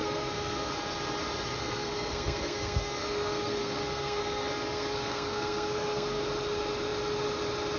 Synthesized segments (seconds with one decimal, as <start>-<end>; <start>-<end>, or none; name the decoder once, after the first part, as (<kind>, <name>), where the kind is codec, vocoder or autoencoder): 0.0-0.7 (codec, SNAC); 1.6-6.2

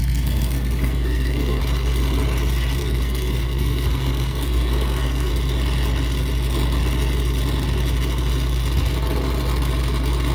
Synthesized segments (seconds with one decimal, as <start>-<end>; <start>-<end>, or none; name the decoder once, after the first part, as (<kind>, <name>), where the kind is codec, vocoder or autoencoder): 0.0-1.6 (codec, SNAC); 2.8-5.3

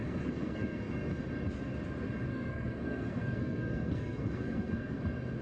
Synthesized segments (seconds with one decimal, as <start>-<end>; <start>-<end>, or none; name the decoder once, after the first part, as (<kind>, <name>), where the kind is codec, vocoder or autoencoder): 0.0-0.8 (codec, SNAC); 2.3-5.0

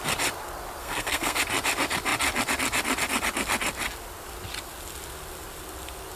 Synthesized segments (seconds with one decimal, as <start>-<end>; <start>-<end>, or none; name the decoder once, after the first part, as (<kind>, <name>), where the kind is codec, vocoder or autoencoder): 0.8-1.4 (codec, SNAC)

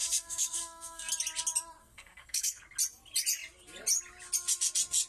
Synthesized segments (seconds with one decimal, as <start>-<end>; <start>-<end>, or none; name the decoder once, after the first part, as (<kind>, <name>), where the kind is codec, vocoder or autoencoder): 0.0-1.1 (codec, SNAC); 1.8-2.6

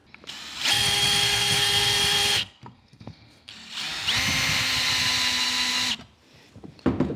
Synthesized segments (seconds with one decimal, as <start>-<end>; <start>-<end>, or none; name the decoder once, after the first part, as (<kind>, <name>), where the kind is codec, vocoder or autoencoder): 0.7-3.5 (codec, SNAC)

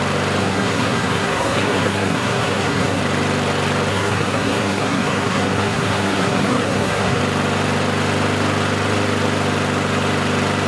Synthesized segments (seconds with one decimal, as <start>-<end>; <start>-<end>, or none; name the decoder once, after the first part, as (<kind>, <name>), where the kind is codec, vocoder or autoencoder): 0.4-3.0 (codec, SNAC); 3.9-7.2